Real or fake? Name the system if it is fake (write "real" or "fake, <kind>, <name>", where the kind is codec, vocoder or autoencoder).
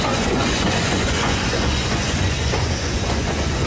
fake, vocoder, Vocos